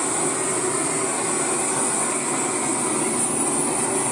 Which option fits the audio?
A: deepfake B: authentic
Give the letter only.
B